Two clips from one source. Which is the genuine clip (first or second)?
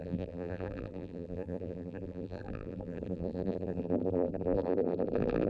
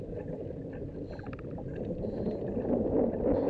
second